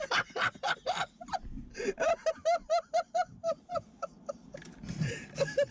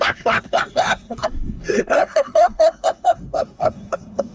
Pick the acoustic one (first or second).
first